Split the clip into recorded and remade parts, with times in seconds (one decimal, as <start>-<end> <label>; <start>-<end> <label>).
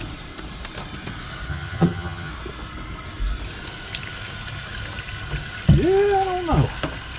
0.0-1.5 recorded; 1.5-2.3 remade; 2.3-7.2 recorded